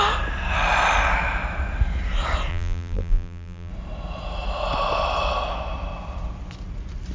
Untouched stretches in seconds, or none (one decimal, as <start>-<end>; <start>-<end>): 0.0-2.5; 3.7-7.1